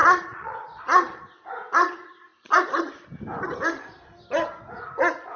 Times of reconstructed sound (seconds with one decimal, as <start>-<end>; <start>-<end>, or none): 0.0-1.2